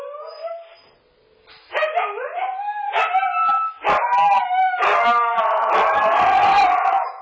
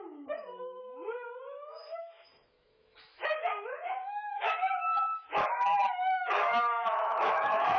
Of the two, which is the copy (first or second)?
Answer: second